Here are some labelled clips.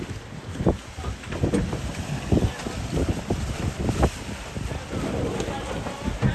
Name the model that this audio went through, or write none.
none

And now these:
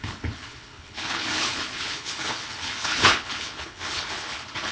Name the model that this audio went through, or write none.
codec, HILCodec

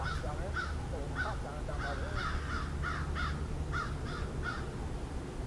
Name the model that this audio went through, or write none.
none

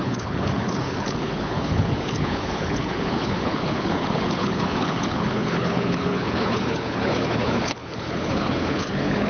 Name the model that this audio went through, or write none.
codec, HILCodec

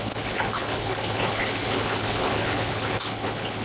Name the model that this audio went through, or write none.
codec, HILCodec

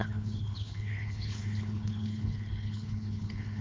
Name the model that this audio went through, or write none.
codec, HILCodec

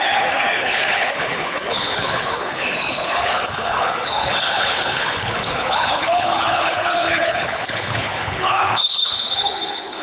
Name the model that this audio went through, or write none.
codec, HILCodec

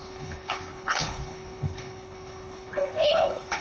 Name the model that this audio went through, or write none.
codec, HILCodec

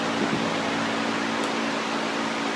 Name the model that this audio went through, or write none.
none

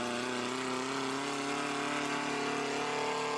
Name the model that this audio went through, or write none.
none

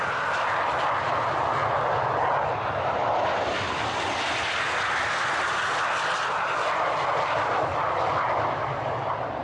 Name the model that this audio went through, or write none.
none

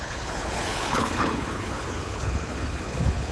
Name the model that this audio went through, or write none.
codec, HILCodec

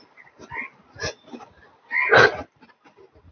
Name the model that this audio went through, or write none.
none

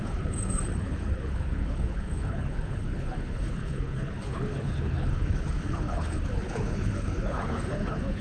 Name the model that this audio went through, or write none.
codec, HILCodec